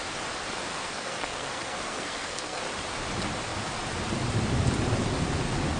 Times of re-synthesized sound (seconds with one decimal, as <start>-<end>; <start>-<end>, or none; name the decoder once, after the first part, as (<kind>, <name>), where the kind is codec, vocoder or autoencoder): 0.7-2.6 (codec, SNAC)